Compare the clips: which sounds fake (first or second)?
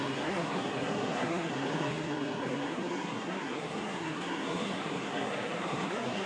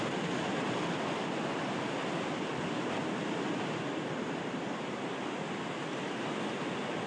first